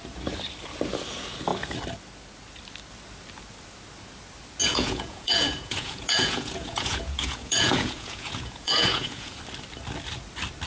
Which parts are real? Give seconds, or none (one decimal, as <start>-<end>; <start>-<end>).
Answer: 0.0-4.6; 9.4-10.7